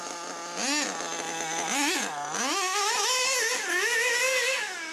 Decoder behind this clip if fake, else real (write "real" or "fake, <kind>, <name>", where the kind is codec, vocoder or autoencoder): real